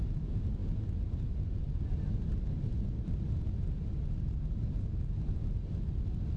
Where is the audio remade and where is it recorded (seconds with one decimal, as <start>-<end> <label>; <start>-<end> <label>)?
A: 0.0-6.4 recorded